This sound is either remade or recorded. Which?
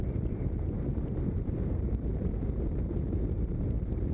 remade